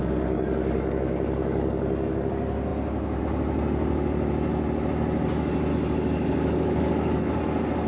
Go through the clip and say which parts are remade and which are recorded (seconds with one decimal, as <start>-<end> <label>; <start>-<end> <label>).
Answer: 0.0-2.3 remade; 2.3-5.7 recorded; 5.7-7.4 remade; 7.4-7.9 recorded